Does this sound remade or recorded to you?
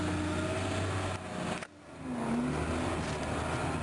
recorded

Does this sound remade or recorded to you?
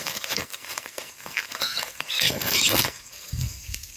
remade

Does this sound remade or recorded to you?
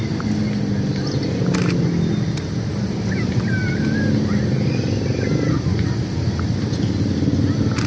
recorded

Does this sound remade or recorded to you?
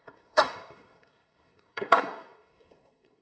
remade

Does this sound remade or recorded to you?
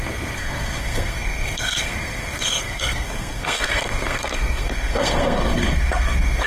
remade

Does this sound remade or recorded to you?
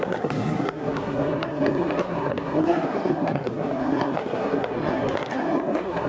remade